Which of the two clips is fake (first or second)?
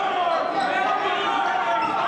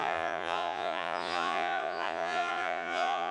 second